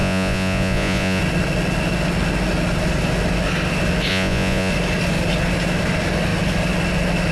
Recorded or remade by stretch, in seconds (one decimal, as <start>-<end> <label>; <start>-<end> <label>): 0.0-1.2 remade; 1.2-4.1 recorded; 4.1-4.7 remade; 4.7-7.3 recorded